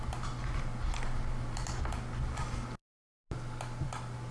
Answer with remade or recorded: recorded